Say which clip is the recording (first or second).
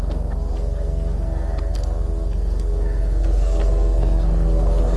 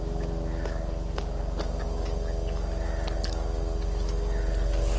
second